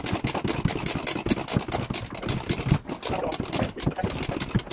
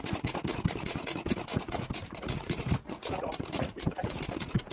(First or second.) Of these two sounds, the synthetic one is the second